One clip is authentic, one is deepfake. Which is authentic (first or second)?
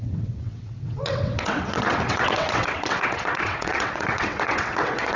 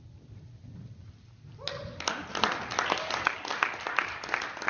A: second